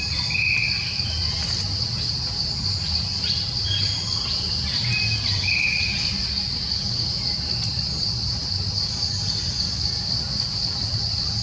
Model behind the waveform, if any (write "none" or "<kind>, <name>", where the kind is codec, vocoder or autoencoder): none